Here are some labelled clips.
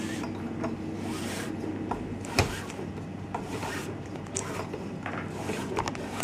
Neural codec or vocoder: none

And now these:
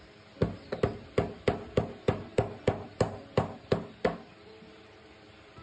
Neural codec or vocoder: none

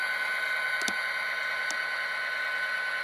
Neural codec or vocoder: none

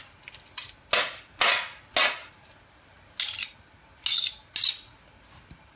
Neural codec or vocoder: none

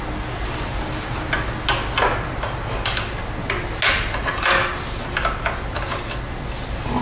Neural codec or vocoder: none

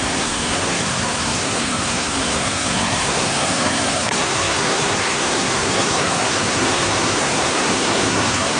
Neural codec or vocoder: codec, SNAC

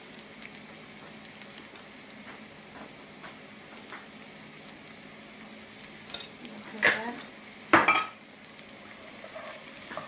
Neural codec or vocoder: none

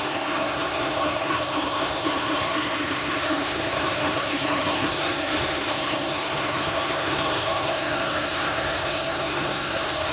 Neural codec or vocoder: codec, SNAC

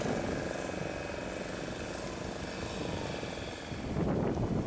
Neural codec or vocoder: none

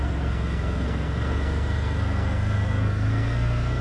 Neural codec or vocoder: codec, SNAC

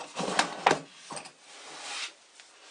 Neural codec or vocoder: none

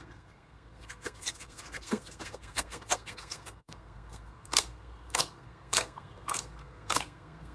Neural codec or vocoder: codec, SNAC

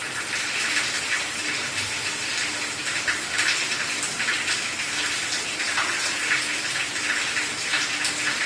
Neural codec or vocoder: none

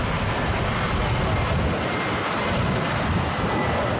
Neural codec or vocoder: none